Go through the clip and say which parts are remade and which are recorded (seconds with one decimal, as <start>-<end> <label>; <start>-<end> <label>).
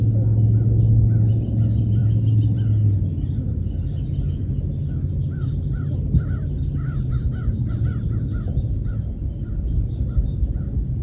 0.0-11.0 recorded